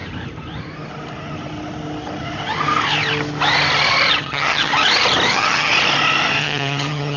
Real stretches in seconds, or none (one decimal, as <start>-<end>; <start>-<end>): 0.0-4.2; 4.7-5.3; 5.7-6.4